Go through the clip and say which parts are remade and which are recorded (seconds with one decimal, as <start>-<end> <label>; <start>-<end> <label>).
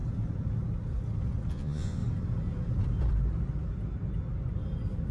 0.0-1.5 recorded; 1.5-2.0 remade; 2.0-5.1 recorded